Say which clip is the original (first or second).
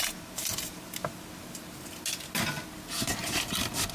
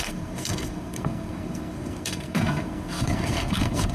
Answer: first